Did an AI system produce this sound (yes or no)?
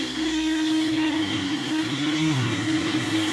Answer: yes